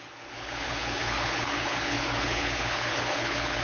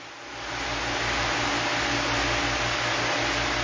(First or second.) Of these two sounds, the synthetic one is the first